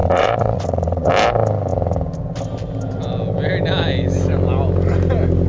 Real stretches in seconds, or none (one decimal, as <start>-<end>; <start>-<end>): 1.1-5.5